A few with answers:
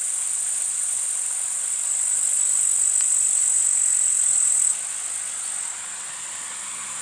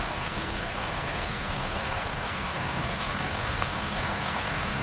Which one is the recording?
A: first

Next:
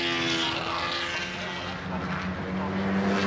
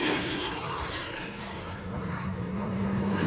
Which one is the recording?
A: first